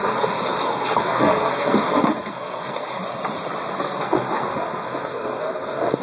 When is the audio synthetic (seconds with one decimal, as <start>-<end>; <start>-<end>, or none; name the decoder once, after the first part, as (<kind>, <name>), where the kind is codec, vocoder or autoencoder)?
0.0-3.0 (codec, SNAC); 3.7-6.0